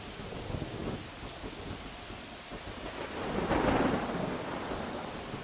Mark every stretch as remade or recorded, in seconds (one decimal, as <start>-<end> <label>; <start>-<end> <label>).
0.0-5.4 recorded